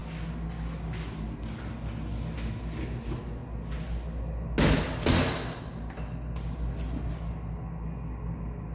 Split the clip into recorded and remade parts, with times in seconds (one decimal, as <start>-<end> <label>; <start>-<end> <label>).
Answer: 0.0-8.7 recorded